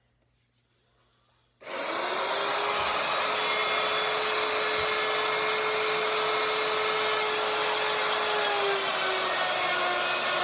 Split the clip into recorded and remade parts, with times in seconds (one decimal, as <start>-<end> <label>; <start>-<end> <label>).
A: 0.0-10.4 recorded